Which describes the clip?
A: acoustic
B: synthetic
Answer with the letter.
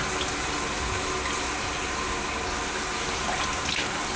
A